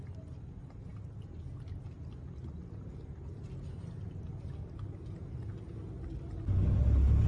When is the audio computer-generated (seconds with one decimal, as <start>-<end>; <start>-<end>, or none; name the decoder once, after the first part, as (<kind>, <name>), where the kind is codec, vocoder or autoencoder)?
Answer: none